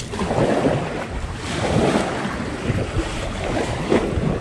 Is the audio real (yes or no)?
no